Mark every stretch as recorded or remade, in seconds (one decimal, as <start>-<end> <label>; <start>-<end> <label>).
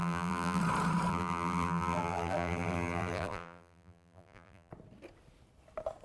0.0-0.6 remade; 0.6-1.1 recorded; 1.1-4.7 remade; 4.7-6.0 recorded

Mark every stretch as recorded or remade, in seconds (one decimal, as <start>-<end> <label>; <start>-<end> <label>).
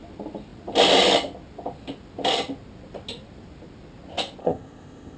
0.0-4.4 recorded; 4.4-5.2 remade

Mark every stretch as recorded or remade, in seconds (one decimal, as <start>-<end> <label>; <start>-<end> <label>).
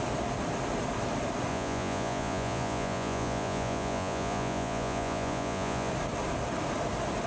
0.0-1.5 recorded; 1.5-5.9 remade; 5.9-7.3 recorded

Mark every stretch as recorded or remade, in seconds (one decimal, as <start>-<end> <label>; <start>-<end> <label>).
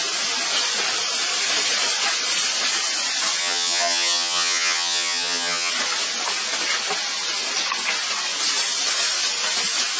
0.0-3.4 recorded; 3.4-5.7 remade; 5.7-10.0 recorded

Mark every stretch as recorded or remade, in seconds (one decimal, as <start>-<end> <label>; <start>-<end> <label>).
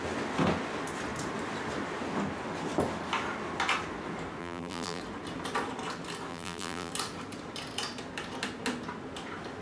0.0-4.4 recorded; 4.4-5.0 remade; 5.0-6.3 recorded; 6.3-6.9 remade; 6.9-9.6 recorded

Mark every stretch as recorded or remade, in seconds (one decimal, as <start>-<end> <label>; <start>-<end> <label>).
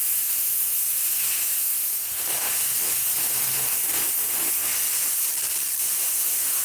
0.0-5.3 remade; 5.3-5.8 recorded; 5.8-6.6 remade